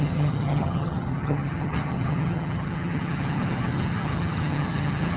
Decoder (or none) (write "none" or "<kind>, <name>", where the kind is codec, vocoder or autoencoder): vocoder, HiFi-GAN